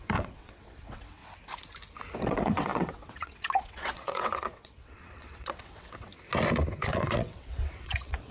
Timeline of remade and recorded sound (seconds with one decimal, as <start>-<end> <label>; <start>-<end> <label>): 0.0-1.2 remade; 1.2-2.2 recorded; 2.2-6.1 remade; 6.1-6.7 recorded; 6.7-8.3 remade